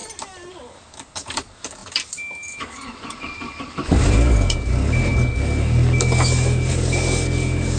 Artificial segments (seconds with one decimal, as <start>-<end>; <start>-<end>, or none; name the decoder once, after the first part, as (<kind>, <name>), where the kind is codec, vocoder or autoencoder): 0.5-7.8 (codec, DAC)